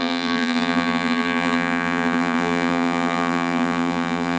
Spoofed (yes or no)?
yes